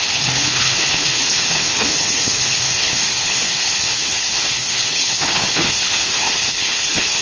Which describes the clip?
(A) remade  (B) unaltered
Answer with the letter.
A